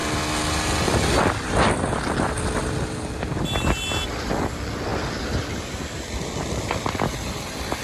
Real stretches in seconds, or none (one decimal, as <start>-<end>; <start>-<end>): 0.0-4.9; 5.5-7.8